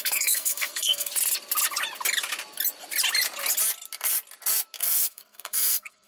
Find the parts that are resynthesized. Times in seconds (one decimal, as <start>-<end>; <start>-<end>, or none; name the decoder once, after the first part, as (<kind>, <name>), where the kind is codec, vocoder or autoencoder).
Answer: 0.0-1.1 (codec, SNAC); 4.8-6.1